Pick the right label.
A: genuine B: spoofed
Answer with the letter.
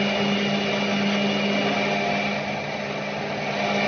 A